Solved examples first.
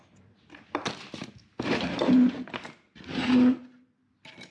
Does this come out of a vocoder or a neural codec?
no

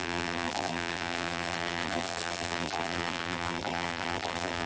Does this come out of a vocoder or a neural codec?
yes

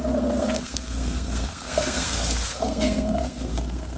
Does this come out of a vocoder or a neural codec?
yes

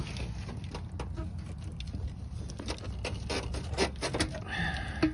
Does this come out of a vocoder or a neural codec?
no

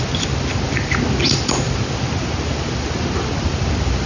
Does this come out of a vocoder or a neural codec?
no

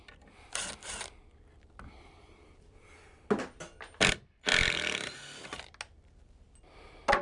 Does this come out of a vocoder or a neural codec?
no